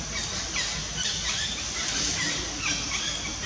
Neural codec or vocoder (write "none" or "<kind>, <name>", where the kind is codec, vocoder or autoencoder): none